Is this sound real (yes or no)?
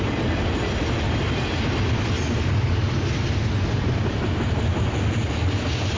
yes